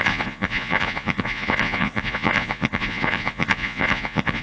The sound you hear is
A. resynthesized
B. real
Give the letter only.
A